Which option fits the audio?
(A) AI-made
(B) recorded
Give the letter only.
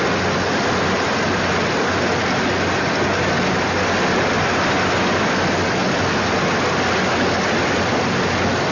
B